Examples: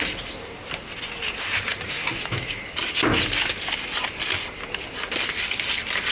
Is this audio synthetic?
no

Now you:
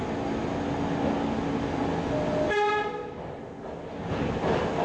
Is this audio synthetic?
no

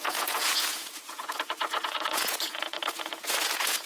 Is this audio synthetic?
yes